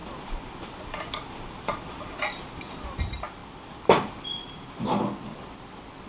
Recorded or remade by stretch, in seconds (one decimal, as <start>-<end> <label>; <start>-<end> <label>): 0.0-3.0 remade; 3.0-3.4 recorded; 3.4-4.4 remade; 4.4-6.1 recorded